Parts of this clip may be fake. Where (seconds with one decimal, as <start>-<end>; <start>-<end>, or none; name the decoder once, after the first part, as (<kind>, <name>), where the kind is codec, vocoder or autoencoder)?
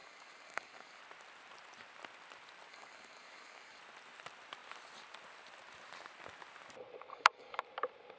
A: 0.0-1.0 (codec, DAC); 2.7-3.8; 7.1-7.6